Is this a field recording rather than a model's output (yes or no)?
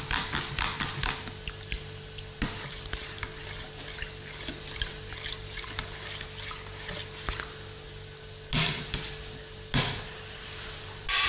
yes